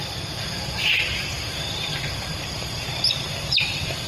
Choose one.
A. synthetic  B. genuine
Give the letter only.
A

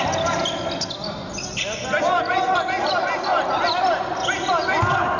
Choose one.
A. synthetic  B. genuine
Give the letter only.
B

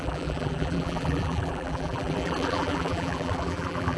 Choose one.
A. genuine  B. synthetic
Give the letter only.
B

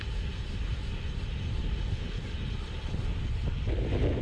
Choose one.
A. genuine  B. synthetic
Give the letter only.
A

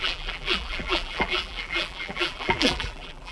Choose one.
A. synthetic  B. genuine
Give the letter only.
A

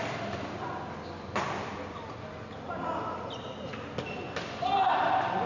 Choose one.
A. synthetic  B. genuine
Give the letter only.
B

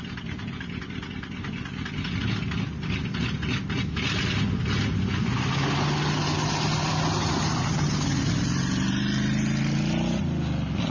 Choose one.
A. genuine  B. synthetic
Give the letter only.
A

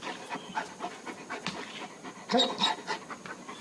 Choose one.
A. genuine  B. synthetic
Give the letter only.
A